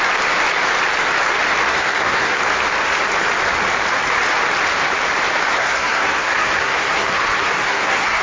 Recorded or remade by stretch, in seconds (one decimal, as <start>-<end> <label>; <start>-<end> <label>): 0.0-1.7 recorded; 1.7-2.4 remade; 2.4-5.6 recorded; 5.6-8.2 remade